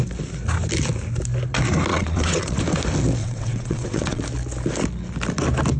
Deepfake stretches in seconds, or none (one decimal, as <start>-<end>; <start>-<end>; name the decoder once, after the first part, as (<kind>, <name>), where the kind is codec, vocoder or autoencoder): 1.9-2.6 (vocoder, WaveNeXt); 3.2-4.2